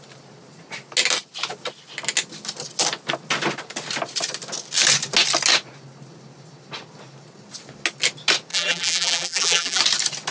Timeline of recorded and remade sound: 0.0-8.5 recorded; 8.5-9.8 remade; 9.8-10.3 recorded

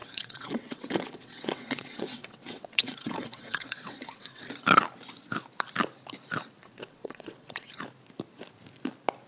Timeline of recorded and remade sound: 0.0-4.4 remade; 4.4-6.6 recorded; 6.6-7.7 remade; 7.7-9.3 recorded